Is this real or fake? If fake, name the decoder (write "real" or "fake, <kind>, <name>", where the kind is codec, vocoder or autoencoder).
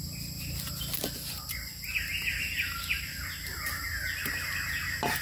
real